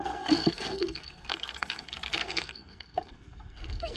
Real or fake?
fake